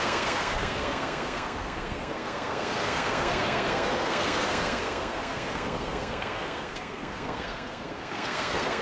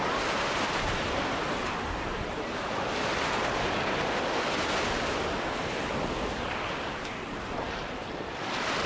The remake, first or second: first